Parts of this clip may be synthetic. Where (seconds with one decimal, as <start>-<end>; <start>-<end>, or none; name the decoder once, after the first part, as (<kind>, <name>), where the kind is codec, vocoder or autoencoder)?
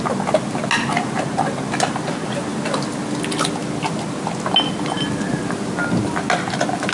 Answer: none